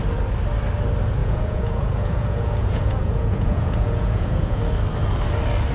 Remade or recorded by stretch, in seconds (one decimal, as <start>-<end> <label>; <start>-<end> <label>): 0.0-1.2 recorded; 1.2-4.6 remade; 4.6-5.7 recorded